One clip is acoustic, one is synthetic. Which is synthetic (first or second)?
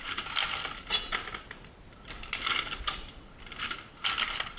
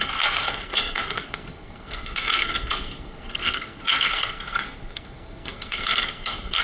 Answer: second